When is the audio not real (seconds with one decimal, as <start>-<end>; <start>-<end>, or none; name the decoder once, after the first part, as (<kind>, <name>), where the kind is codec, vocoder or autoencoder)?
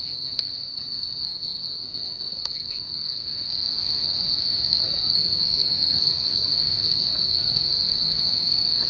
0.0-8.9 (codec, SNAC)